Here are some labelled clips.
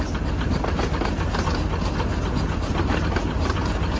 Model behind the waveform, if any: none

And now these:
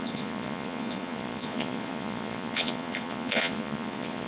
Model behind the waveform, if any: vocoder, Vocos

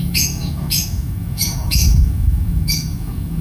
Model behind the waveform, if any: autoencoder, DAC-VAE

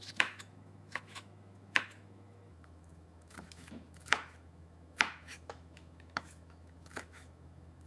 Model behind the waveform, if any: autoencoder, DAC-VAE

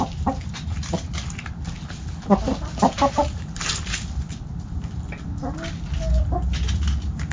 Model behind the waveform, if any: none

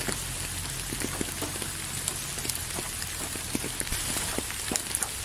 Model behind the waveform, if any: none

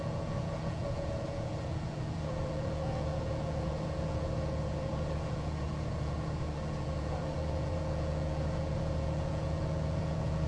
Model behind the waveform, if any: vocoder, Vocos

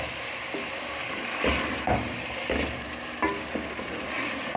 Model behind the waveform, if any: none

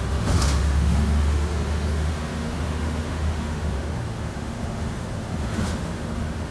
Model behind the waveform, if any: autoencoder, DAC-VAE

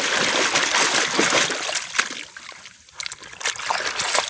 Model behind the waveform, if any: none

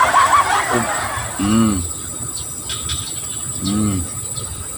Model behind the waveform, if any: none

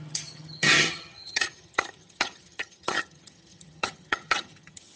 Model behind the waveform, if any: vocoder, HiFi-GAN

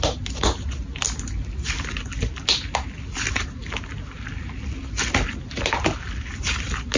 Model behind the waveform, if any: none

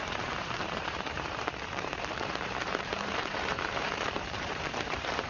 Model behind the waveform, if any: vocoder, BigVGAN v2